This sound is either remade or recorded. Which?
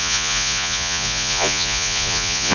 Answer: remade